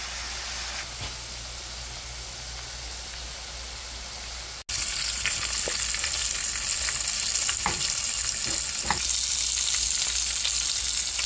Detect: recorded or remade recorded